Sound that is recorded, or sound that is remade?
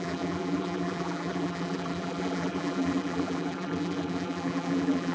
remade